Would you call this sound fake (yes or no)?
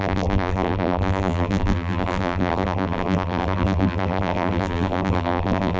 yes